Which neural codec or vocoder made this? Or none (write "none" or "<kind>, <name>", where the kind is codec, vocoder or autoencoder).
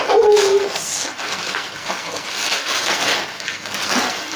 codec, SNAC